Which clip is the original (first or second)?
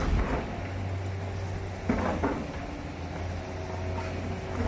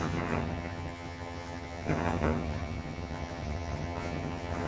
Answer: first